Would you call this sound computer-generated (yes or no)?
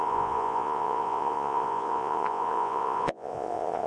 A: yes